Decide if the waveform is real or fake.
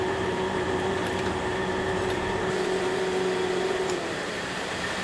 fake